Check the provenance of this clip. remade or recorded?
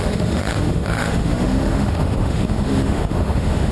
remade